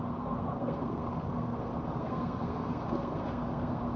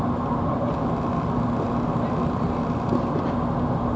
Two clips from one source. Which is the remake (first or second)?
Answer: first